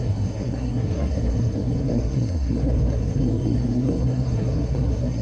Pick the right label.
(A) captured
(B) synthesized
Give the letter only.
B